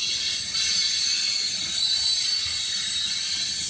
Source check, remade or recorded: recorded